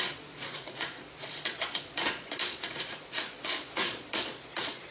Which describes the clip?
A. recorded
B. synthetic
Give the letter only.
B